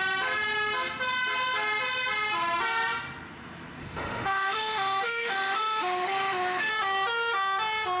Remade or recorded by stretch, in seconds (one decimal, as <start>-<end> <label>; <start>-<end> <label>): 0.0-3.8 recorded; 3.8-6.7 remade; 6.7-8.0 recorded